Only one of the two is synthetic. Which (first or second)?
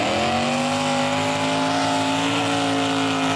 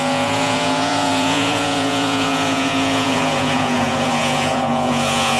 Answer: second